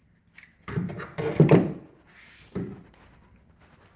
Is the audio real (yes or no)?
yes